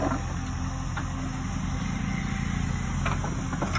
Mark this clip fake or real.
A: real